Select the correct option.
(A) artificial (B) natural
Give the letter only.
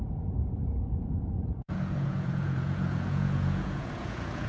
A